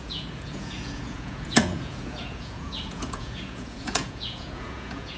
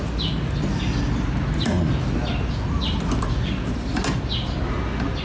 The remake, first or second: first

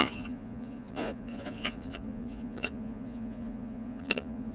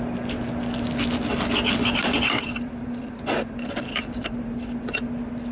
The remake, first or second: first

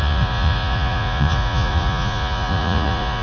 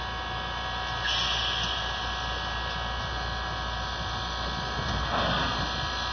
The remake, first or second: first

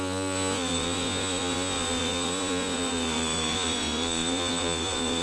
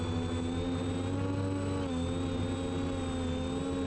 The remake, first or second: first